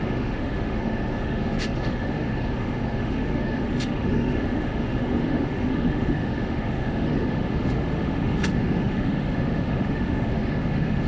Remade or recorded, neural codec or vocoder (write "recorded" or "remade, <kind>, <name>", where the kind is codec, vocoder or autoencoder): remade, autoencoder, DAC-VAE